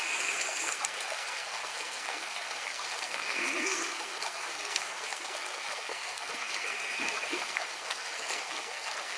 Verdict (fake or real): fake